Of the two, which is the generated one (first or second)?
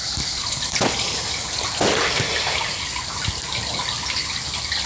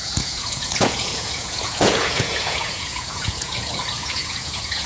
second